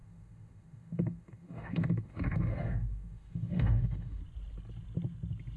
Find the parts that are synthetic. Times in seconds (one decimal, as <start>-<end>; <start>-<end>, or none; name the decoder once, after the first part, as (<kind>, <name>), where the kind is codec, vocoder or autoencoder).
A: 0.0-4.2 (autoencoder, DAC-VAE)

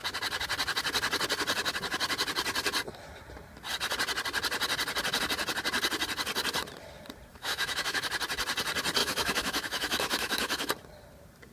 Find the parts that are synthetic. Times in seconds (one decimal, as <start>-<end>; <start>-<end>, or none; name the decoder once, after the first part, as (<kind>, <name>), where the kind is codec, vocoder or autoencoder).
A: 7.3-8.0 (autoencoder, DAC-VAE); 9.0-10.7

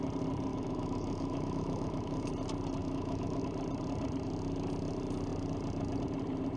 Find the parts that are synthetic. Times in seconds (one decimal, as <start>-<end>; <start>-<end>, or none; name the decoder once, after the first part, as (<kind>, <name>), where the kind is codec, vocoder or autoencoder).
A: 0.5-2.3 (autoencoder, DAC-VAE); 2.8-3.4

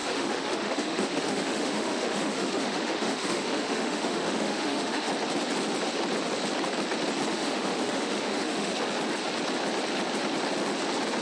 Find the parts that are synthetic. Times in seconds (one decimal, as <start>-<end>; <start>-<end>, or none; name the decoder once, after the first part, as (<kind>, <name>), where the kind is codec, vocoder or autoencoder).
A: 0.0-5.1 (autoencoder, DAC-VAE); 7.3-8.7

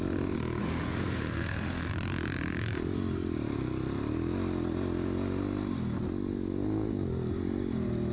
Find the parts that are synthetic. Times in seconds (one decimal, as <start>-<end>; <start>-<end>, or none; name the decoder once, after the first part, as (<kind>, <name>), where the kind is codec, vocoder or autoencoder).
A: 0.6-1.9 (autoencoder, DAC-VAE)

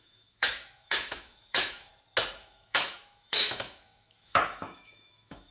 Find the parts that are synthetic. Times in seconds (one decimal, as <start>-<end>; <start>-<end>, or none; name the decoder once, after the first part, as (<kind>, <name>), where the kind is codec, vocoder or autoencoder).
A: 0.0-1.9 (autoencoder, DAC-VAE); 2.4-5.5

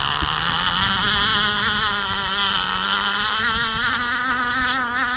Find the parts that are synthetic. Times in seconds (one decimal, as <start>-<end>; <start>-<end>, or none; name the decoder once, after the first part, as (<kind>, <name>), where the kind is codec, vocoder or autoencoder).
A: none

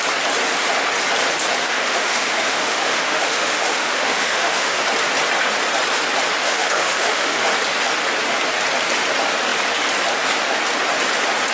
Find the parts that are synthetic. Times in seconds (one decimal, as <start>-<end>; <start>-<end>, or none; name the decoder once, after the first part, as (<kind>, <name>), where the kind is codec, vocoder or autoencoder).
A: 1.6-4.8 (autoencoder, DAC-VAE); 6.4-7.4